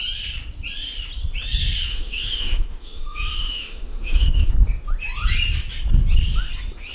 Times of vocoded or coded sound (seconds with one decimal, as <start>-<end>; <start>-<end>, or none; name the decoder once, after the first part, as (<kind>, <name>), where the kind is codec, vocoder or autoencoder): 1.9-4.5 (autoencoder, DAC-VAE)